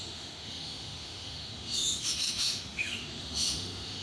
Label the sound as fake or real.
fake